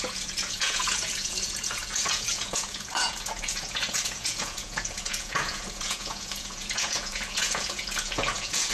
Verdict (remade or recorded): remade